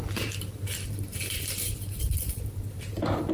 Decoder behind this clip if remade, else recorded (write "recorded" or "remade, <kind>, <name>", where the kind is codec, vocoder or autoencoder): remade, vocoder, BigVGAN v2